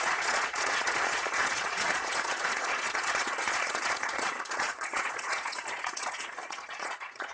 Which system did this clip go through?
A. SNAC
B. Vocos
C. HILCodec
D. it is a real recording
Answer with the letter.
B